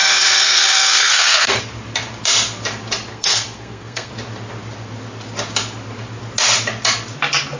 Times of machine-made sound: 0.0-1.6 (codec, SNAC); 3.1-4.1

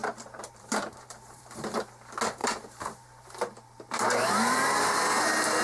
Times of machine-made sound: 0.0-1.5 (vocoder, BigVGAN v2); 2.4-5.0

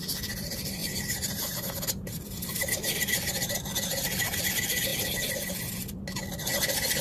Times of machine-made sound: 0.8-4.5 (vocoder, BigVGAN v2)

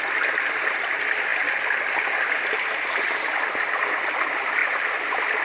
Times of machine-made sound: none